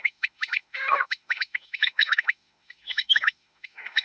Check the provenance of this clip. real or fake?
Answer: fake